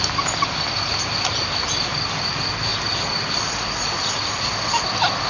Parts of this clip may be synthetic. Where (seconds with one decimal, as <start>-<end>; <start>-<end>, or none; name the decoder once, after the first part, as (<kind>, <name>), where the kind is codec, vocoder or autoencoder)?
none